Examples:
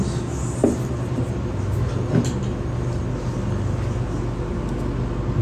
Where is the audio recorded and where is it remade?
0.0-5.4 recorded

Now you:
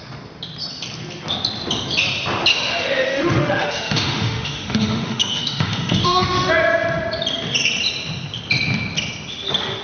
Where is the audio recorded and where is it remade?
0.0-2.5 recorded; 2.5-6.5 remade; 6.5-9.8 recorded

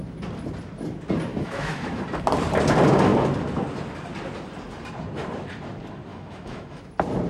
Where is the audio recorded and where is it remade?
0.0-1.3 recorded; 1.3-2.0 remade; 2.0-6.1 recorded; 6.1-6.8 remade; 6.8-7.3 recorded

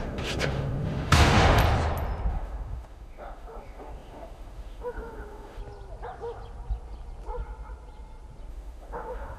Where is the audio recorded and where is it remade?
0.0-1.6 remade; 1.6-2.3 recorded; 2.3-5.6 remade; 5.6-8.5 recorded; 8.5-9.4 remade

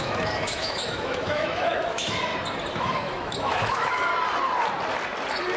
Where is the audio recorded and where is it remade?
0.0-2.3 remade; 2.3-2.8 recorded; 2.8-4.1 remade; 4.1-5.6 recorded

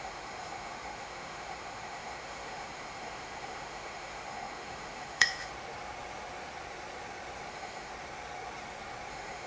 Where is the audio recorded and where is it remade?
0.0-5.5 remade; 5.5-7.5 recorded; 7.5-7.9 remade; 7.9-9.1 recorded; 9.1-9.5 remade

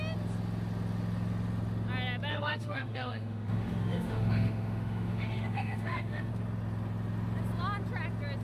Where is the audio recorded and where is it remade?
0.0-2.3 recorded; 2.3-6.3 remade; 6.3-8.4 recorded